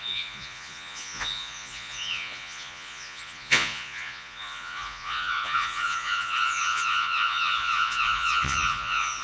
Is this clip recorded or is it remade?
remade